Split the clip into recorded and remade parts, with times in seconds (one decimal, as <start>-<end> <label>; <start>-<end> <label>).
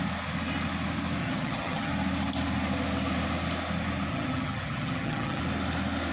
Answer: 0.0-1.2 recorded; 1.2-1.9 remade; 1.9-4.1 recorded; 4.1-5.4 remade; 5.4-6.1 recorded